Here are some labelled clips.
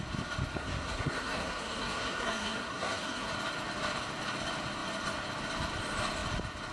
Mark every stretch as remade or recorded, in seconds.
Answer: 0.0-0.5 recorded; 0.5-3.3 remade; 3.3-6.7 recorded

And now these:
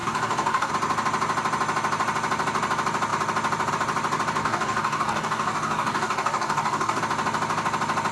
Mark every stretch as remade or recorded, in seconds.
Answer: 0.0-0.7 remade; 0.7-4.4 recorded; 4.4-7.0 remade; 7.0-8.1 recorded

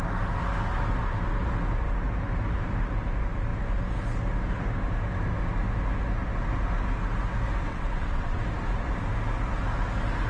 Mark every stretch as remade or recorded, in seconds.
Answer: 0.0-7.7 recorded; 7.7-8.4 remade; 8.4-10.3 recorded

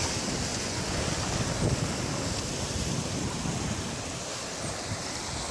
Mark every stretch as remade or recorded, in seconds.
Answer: 0.0-0.5 recorded; 0.5-1.0 remade; 1.0-5.5 recorded

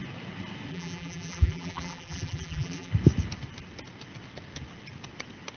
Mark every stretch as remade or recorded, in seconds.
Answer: 0.0-0.7 recorded; 0.7-2.9 remade; 2.9-5.6 recorded

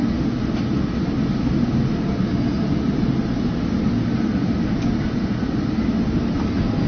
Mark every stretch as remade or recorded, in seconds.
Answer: 0.0-6.9 recorded

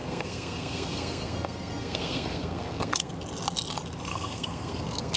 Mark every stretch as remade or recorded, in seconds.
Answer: 0.0-3.1 remade; 3.1-4.1 recorded; 4.1-5.2 remade